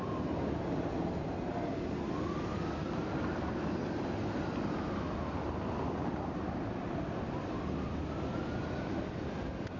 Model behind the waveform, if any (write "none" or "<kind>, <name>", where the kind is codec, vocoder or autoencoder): none